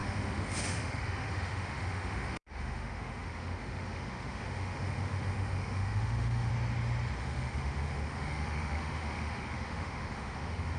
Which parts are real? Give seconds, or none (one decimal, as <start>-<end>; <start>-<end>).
6.5-7.2